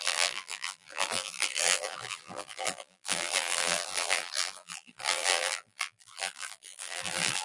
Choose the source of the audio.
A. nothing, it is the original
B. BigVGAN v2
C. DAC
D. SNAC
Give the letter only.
B